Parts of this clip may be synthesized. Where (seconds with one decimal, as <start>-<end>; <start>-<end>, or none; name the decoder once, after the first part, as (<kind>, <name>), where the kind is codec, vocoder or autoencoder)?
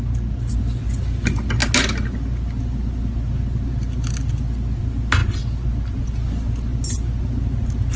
none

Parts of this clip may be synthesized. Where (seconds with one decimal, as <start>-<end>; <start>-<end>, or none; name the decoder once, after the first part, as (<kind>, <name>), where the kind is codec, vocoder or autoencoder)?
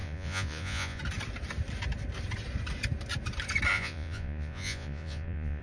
0.0-1.0 (vocoder, Vocos); 3.7-5.6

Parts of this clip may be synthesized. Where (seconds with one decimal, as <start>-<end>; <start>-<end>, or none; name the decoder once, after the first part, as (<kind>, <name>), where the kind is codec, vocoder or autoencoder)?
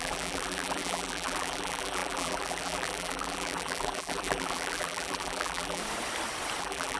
0.0-5.8 (vocoder, BigVGAN v2); 6.6-7.0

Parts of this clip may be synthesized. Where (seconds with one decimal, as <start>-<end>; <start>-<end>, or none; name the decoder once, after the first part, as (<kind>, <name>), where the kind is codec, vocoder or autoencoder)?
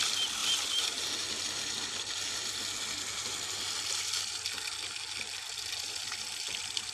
none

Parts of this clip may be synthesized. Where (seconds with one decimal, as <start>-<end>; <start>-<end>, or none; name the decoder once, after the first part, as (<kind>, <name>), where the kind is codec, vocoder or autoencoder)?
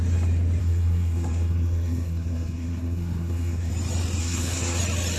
0.6-3.7 (codec, SNAC); 4.2-4.8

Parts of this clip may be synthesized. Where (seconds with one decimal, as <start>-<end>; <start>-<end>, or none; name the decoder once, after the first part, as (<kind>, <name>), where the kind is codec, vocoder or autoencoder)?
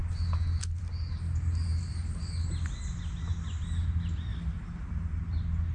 4.3-5.2 (vocoder, BigVGAN v2)